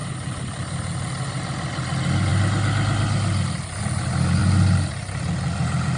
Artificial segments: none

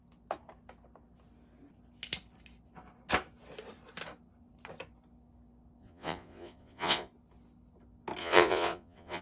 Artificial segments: 5.8-7.1 (vocoder, Vocos); 8.2-9.2

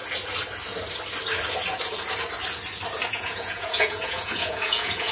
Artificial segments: 3.1-5.1 (vocoder, Vocos)

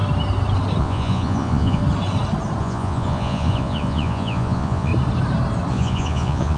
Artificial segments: 0.8-1.8 (vocoder, Vocos); 2.6-4.9; 5.7-6.6

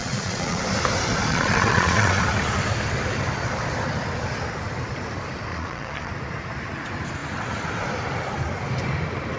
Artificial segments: 0.0-0.6 (vocoder, Vocos); 1.3-2.2; 5.5-6.1

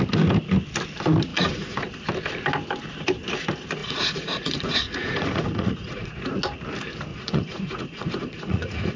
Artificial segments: 1.3-1.8 (vocoder, Vocos); 3.8-6.1; 7.1-9.0

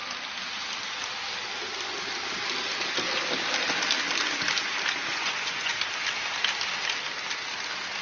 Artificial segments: 5.1-5.7 (vocoder, Vocos)